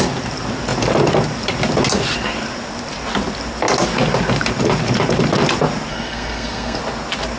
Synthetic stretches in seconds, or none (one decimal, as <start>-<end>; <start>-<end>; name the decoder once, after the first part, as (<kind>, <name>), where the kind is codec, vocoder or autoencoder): 5.9-6.8 (codec, SNAC)